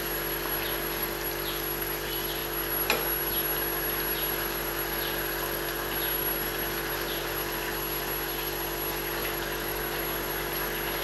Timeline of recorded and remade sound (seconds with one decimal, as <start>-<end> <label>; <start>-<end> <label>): 0.0-9.2 recorded; 9.2-9.8 remade; 9.8-11.0 recorded